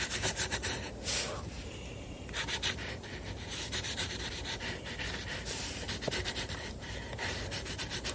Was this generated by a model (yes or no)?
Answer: yes